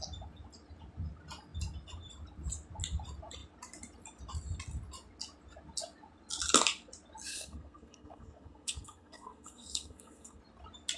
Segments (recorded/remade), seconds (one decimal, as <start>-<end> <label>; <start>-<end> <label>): 0.0-7.3 recorded; 7.3-10.4 remade; 10.4-11.0 recorded